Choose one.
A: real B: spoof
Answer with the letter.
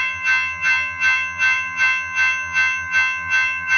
B